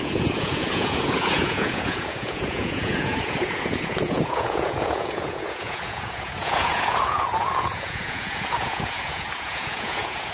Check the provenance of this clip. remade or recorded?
remade